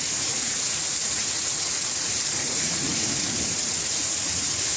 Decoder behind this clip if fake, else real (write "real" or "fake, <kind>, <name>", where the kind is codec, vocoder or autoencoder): fake, vocoder, Vocos